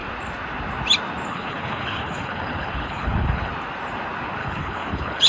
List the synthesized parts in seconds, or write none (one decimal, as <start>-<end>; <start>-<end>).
1.3-3.5; 4.4-5.3